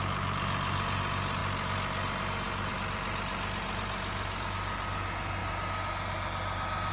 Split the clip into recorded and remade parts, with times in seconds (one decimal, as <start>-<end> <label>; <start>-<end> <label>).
0.0-6.9 recorded